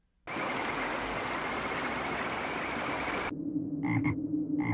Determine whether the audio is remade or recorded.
recorded